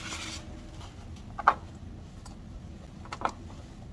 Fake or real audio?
real